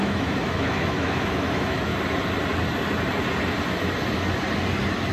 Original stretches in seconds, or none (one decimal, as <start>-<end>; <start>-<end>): 1.9-5.1